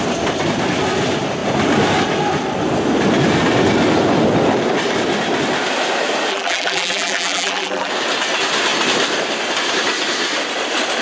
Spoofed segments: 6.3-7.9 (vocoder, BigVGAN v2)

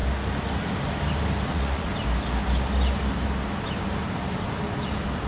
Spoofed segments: 1.5-1.9 (vocoder, Vocos)

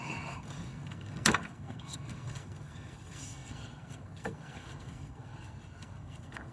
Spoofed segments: 0.0-6.5 (codec, SNAC)

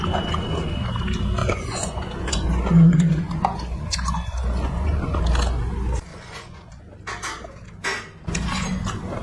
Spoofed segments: 1.4-5.2 (vocoder, Vocos); 6.1-6.8

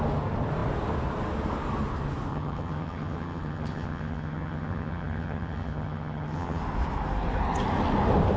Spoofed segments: 2.3-6.6 (vocoder, HiFi-GAN)

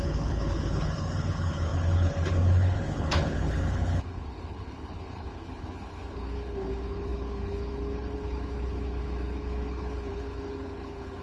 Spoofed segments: 0.0-11.2 (codec, HILCodec)

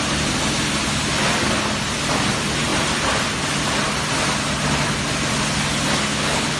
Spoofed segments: 6.1-6.6 (codec, HILCodec)

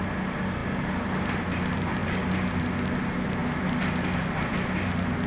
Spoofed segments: none